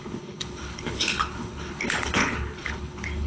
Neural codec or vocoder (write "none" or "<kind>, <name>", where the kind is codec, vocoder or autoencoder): codec, HILCodec